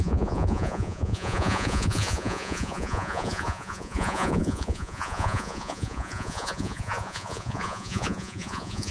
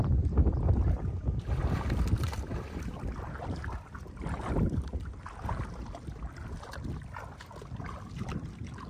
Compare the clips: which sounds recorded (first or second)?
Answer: second